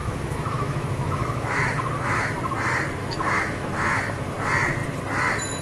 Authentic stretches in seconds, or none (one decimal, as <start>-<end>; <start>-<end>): 2.4-3.0; 4.3-5.6